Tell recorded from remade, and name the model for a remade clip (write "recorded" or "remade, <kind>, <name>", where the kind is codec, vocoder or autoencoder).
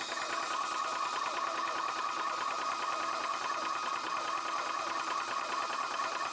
recorded